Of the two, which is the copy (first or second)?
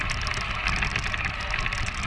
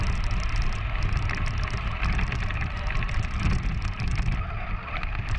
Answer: second